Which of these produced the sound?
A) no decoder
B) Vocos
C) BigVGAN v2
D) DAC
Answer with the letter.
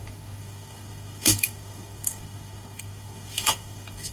D